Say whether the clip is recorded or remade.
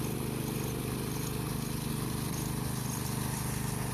recorded